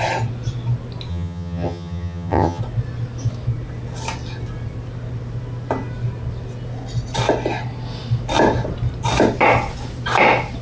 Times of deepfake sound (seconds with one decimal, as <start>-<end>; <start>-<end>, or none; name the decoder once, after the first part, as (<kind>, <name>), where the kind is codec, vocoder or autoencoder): 1.1-2.6 (vocoder, HiFi-GAN)